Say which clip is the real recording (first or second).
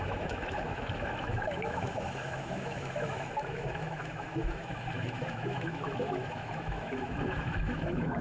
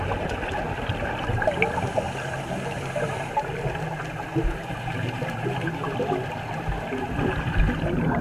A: second